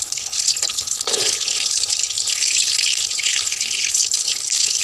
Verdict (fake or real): fake